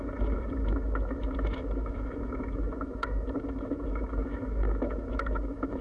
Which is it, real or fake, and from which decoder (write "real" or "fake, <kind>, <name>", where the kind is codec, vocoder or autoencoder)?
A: fake, autoencoder, DAC-VAE